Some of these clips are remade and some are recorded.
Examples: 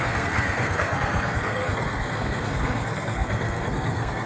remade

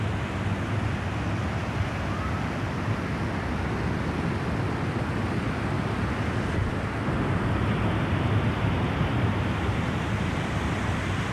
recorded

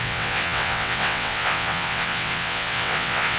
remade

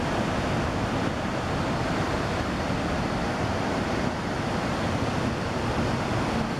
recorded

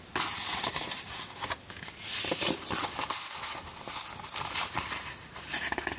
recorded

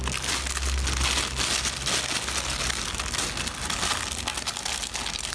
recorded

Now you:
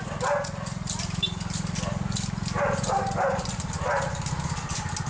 recorded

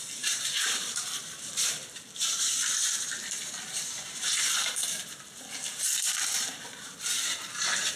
remade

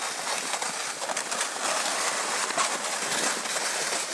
recorded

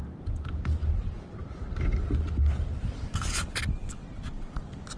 recorded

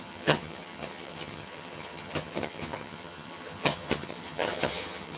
remade